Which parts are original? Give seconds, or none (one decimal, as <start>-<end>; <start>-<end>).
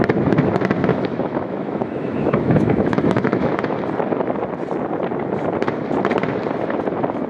0.0-0.9; 3.5-7.3